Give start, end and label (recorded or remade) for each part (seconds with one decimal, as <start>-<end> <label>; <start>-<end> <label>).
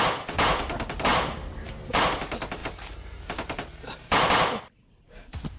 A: 0.0-1.1 recorded; 1.1-2.0 remade; 2.0-2.6 recorded; 2.6-4.6 remade; 4.6-5.6 recorded